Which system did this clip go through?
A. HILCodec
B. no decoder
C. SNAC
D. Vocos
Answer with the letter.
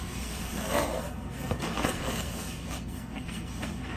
C